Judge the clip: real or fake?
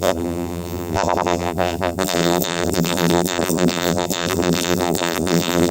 fake